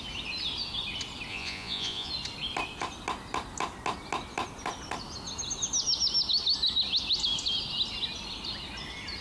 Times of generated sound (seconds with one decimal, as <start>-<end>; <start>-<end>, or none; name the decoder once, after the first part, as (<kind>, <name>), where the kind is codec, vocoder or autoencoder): 1.3-2.1 (vocoder, Vocos)